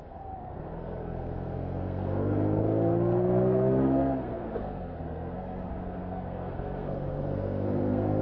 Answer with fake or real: fake